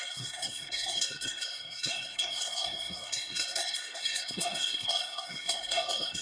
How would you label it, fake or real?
fake